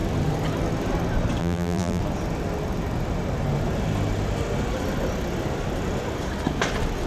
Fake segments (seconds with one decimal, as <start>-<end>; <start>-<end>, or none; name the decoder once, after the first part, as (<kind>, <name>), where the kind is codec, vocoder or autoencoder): 1.4-2.0 (vocoder, BigVGAN v2)